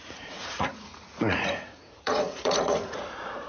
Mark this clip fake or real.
fake